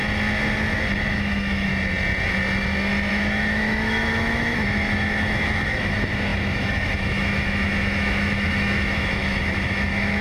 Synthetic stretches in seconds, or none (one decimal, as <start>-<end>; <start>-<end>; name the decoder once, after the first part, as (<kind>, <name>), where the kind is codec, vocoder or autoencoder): 1.1-1.7 (autoencoder, DAC-VAE); 3.1-10.2